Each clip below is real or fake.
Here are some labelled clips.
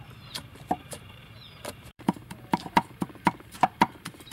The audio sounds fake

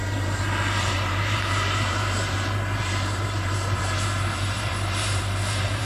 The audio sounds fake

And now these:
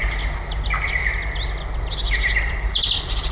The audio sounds fake